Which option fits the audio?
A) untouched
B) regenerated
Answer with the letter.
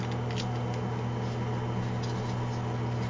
A